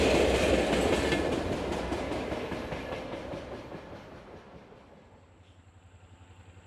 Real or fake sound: real